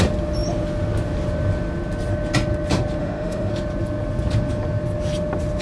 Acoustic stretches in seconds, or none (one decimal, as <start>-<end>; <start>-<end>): 0.0-3.0; 3.5-5.6